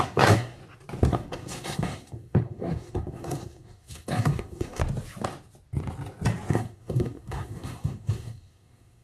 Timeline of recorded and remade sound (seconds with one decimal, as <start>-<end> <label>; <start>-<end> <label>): 0.0-0.6 remade; 0.6-1.1 recorded; 1.1-4.8 remade; 4.8-6.5 recorded; 6.5-9.0 remade